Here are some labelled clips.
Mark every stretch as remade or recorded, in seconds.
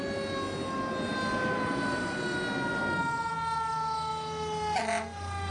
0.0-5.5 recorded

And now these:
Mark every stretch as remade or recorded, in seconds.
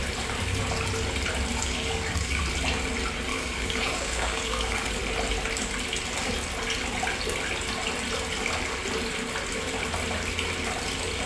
0.0-1.6 recorded; 1.6-2.4 remade; 2.4-3.3 recorded; 3.3-5.0 remade; 5.0-11.3 recorded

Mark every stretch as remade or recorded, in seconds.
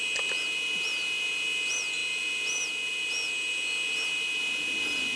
0.0-5.2 recorded